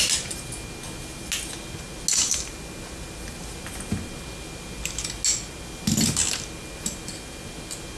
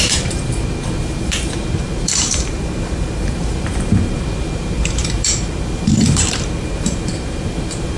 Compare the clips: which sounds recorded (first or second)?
first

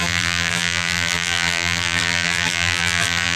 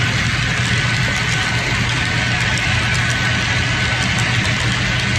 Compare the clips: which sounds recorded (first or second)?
second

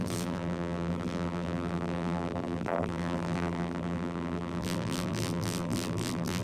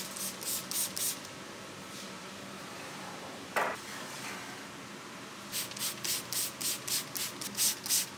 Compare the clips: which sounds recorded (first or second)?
second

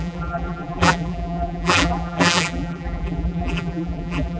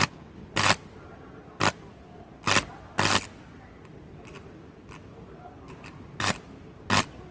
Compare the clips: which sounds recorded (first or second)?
second